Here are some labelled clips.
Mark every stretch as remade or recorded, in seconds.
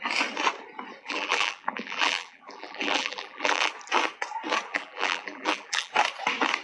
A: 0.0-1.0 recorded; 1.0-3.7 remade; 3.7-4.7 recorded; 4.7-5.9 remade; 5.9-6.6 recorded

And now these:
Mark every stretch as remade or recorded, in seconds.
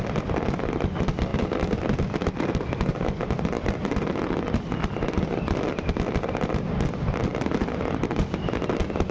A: 0.0-9.1 recorded